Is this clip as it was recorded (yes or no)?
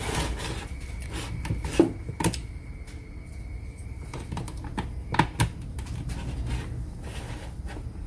yes